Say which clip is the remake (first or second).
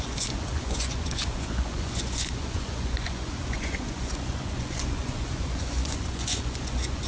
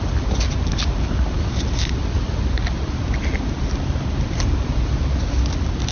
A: first